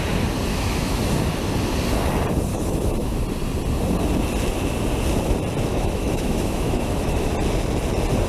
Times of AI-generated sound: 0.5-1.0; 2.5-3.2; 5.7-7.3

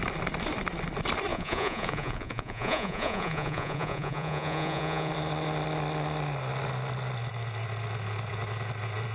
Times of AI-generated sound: 1.3-5.1

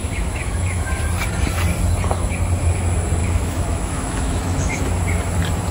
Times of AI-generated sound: 0.0-1.0; 3.2-4.8

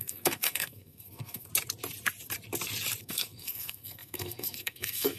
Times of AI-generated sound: 0.0-1.5; 3.0-5.2

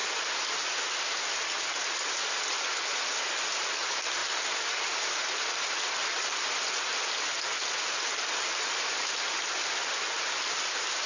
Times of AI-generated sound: none

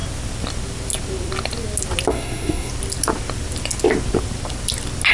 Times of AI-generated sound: 2.1-2.7

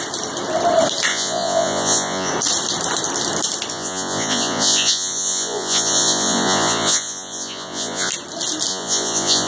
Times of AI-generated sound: 1.1-2.3; 3.7-8.1; 8.7-9.5